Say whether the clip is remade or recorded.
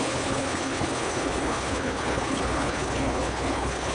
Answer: remade